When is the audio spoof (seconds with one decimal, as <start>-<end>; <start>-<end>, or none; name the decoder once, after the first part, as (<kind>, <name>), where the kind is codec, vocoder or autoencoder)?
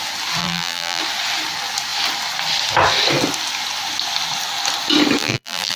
0.4-1.0 (vocoder, BigVGAN v2); 5.2-5.8